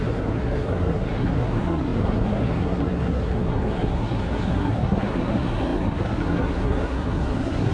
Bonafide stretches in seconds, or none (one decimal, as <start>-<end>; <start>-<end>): none